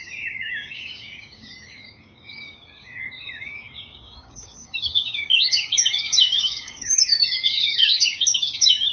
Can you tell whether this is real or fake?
fake